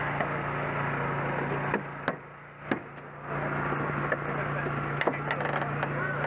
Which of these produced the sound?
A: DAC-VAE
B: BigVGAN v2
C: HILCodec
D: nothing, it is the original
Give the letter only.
D